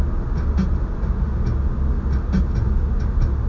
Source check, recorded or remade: recorded